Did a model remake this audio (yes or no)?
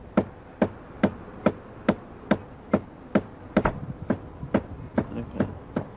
no